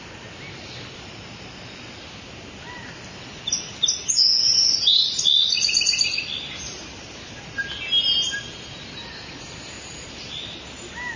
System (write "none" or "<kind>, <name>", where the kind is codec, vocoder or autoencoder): none